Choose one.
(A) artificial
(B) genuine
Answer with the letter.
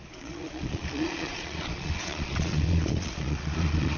A